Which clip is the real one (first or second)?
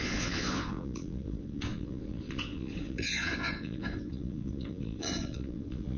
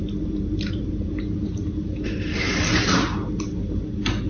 second